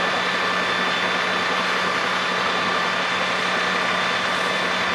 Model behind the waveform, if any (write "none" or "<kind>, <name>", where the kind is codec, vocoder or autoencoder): none